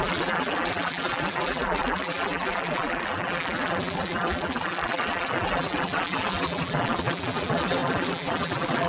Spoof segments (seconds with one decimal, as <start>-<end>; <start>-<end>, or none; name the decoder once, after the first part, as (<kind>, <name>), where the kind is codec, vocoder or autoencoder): 0.0-8.9 (vocoder, BigVGAN v2)